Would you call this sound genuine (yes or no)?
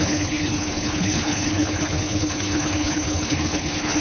no